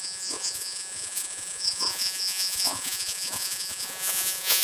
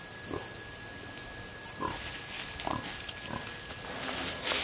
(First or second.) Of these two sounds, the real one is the second